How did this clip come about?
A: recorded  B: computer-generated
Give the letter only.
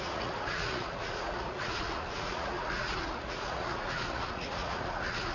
B